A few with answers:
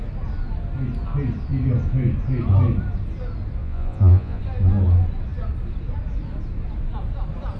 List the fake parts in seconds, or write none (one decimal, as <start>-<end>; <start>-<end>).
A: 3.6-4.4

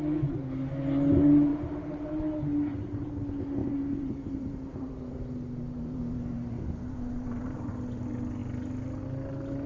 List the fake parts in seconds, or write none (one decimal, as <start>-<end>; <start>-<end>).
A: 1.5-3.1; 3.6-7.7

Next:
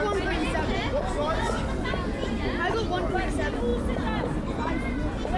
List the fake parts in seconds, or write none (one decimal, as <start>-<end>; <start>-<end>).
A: none